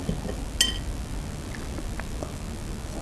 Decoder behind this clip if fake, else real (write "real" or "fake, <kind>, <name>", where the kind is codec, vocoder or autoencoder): real